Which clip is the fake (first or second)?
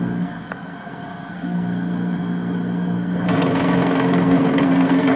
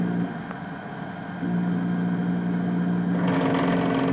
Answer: first